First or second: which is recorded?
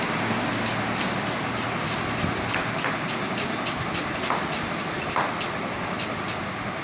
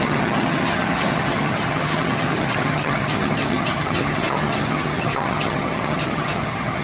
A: first